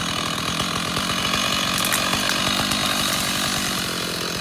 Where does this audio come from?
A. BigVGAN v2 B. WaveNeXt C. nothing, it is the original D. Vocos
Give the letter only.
C